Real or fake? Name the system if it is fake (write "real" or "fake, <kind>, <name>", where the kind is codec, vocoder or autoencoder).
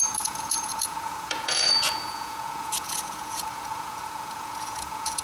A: fake, vocoder, Vocos